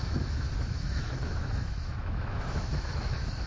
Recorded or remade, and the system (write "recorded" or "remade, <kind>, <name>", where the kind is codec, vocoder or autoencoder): remade, autoencoder, DAC-VAE